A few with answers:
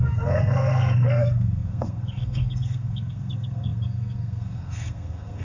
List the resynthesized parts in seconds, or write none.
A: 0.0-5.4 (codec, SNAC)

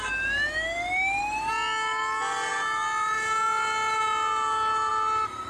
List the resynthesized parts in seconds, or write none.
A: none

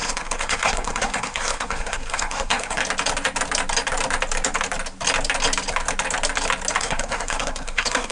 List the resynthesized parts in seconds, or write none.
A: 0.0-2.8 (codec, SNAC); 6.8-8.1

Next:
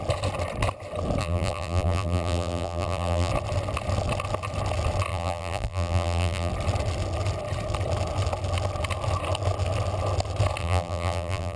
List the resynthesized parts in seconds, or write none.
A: 1.2-3.3 (vocoder, BigVGAN v2); 5.1-6.5; 10.6-11.6

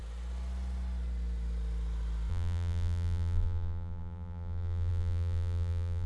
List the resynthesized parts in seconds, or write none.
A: 2.3-6.1 (vocoder, BigVGAN v2)

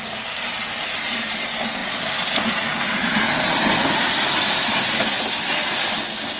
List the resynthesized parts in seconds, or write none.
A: none

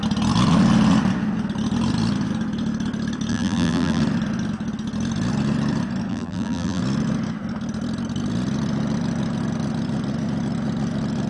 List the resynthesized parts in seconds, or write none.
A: 3.3-4.0 (vocoder, BigVGAN v2); 6.1-6.8

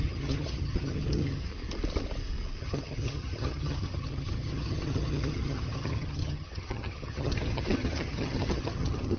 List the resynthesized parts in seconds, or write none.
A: 0.0-1.5 (vocoder, HiFi-GAN); 2.6-9.2